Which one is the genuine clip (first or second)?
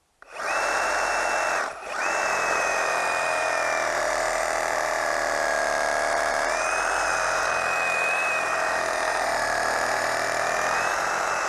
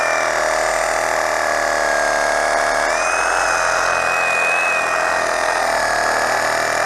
second